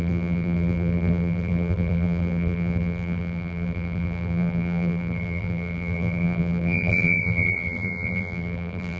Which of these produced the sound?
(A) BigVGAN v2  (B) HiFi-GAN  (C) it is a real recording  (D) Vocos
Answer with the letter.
A